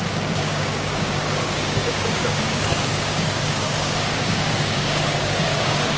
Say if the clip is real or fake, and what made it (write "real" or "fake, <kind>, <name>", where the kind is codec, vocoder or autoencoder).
fake, codec, DAC